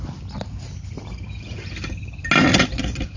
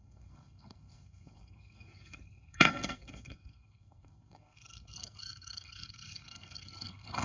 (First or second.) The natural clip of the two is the first